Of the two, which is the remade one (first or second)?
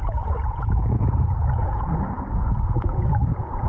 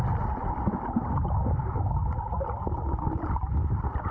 first